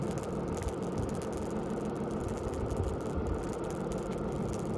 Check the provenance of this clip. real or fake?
real